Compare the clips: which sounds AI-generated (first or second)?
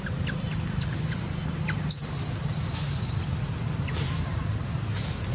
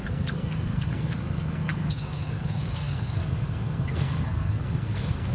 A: second